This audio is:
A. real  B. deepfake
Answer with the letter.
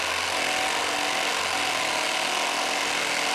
A